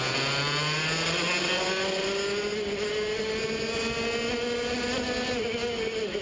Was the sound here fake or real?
real